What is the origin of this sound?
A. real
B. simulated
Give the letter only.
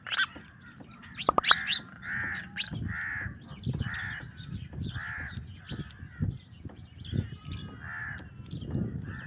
A